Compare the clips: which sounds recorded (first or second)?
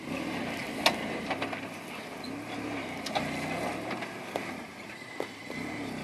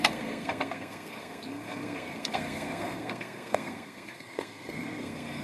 first